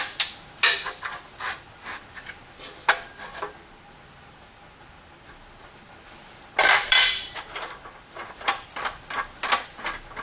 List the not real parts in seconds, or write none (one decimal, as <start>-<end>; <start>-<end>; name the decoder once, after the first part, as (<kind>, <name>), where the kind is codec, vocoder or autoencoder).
none